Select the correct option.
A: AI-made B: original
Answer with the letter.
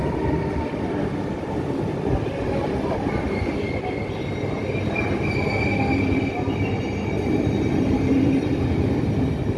B